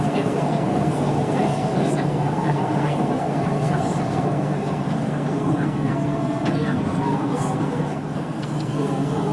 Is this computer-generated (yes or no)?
yes